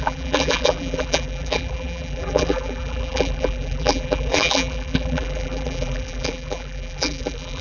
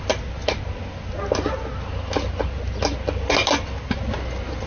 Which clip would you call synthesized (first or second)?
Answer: first